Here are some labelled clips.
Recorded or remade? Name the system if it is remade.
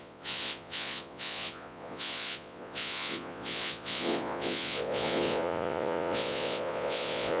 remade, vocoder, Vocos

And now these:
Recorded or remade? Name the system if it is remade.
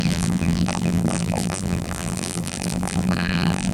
remade, vocoder, BigVGAN v2